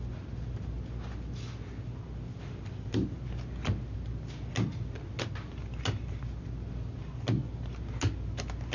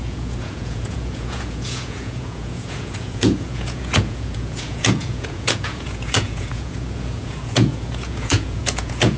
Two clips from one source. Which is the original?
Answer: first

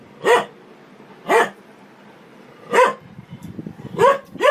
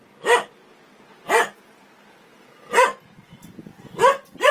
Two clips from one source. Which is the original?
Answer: second